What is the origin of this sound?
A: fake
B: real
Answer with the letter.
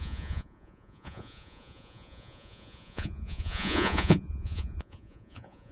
A